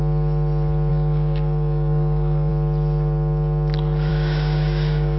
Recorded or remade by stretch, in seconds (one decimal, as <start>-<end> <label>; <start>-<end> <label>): 0.0-0.9 recorded; 0.9-2.5 remade; 2.5-4.1 recorded; 4.1-5.2 remade